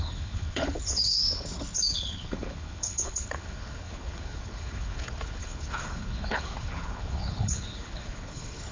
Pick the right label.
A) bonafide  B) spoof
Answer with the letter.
B